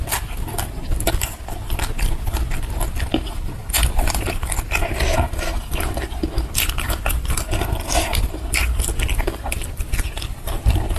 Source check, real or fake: fake